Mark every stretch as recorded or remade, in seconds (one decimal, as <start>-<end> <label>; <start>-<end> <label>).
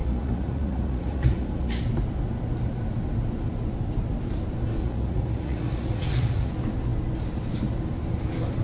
0.0-1.8 remade; 1.8-4.8 recorded; 4.8-6.5 remade; 6.5-8.6 recorded